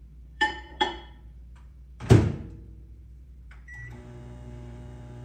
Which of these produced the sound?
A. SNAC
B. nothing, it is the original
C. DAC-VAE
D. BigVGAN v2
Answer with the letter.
D